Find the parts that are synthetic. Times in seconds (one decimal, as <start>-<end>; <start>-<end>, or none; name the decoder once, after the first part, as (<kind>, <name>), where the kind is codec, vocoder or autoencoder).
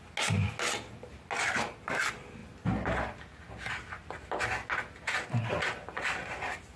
none